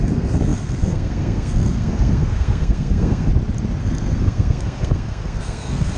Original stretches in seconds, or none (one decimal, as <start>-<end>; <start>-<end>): 3.3-3.8